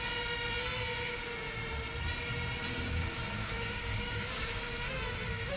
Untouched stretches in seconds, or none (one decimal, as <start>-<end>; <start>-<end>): 0.0-3.4; 4.6-5.6